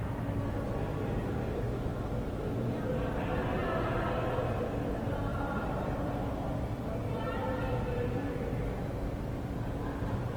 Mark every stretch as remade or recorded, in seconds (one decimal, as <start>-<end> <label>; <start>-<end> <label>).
0.0-5.3 recorded; 5.3-10.4 remade